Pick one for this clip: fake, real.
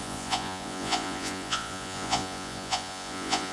fake